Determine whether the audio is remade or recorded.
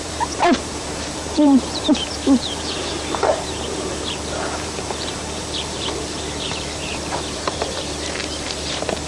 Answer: remade